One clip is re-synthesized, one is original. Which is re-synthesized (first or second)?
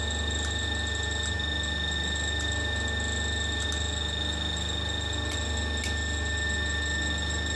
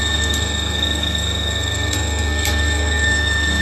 second